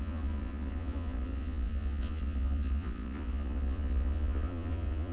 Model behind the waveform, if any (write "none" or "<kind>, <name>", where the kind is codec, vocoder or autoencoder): vocoder, Vocos